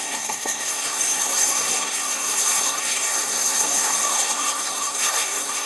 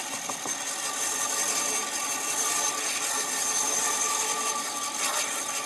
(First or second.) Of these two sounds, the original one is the second